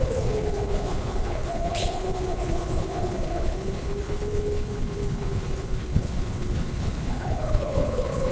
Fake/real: fake